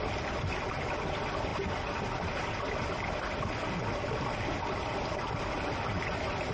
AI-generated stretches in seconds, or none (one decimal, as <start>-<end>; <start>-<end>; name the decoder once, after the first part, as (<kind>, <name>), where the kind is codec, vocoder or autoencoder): none

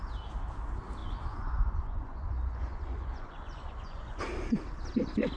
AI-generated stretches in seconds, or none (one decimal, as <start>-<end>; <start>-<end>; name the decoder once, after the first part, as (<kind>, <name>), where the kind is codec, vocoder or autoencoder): 1.0-4.2 (vocoder, Vocos)